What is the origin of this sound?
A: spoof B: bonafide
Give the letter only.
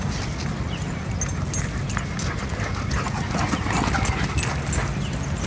B